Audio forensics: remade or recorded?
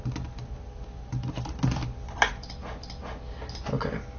recorded